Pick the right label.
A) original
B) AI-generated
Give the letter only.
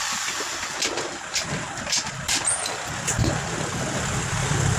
A